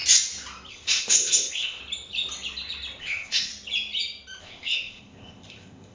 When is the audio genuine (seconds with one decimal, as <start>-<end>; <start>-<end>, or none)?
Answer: 0.0-0.7; 1.8-3.0; 3.5-4.4